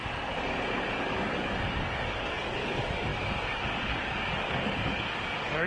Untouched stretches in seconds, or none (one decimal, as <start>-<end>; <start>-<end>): 0.0-0.9